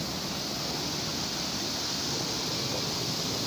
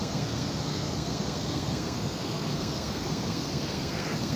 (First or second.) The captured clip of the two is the first